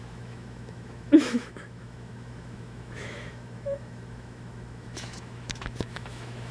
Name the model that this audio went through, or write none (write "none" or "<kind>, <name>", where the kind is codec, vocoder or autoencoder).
autoencoder, DAC-VAE